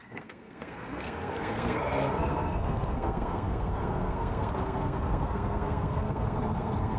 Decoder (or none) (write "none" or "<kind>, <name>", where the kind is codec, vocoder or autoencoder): codec, SNAC